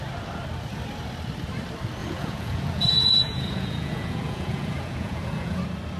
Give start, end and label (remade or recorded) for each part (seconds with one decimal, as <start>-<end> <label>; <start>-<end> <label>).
0.0-2.0 recorded; 2.0-5.6 remade; 5.6-6.0 recorded